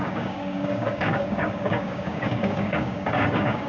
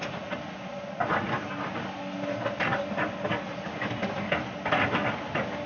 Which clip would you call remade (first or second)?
first